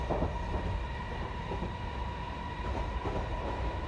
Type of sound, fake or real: real